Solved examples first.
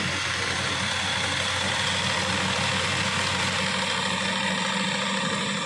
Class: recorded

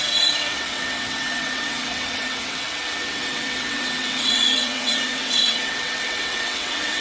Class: remade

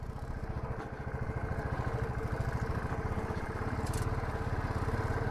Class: recorded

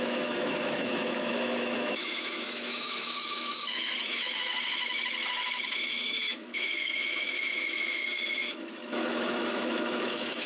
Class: remade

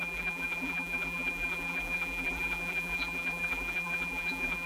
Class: remade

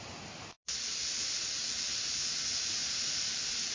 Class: recorded